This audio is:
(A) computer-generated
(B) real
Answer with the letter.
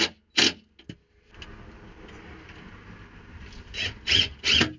B